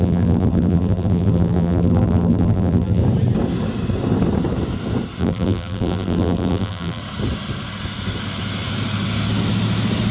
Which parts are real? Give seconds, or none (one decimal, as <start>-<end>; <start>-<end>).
3.0-5.2; 7.0-10.1